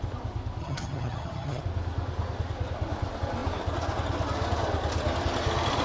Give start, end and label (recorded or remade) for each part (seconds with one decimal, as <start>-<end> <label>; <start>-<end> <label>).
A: 0.0-0.6 recorded; 0.6-1.6 remade; 1.6-5.8 recorded